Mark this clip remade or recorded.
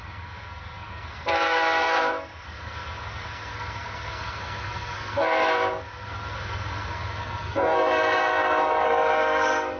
remade